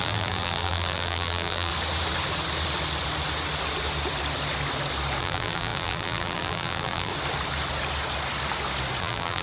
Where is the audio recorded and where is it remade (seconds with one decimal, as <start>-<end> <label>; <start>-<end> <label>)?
0.0-1.7 remade; 1.7-5.2 recorded; 5.2-7.1 remade; 7.1-9.0 recorded; 9.0-9.4 remade